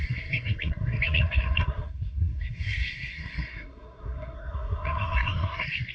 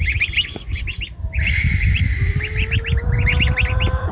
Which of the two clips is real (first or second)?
second